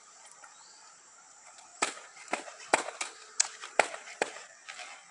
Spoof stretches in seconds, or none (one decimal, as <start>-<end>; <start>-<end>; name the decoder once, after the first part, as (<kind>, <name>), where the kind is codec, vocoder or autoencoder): 0.0-5.1 (vocoder, BigVGAN v2)